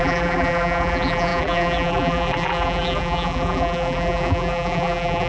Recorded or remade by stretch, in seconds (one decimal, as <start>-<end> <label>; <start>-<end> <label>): 0.0-5.3 remade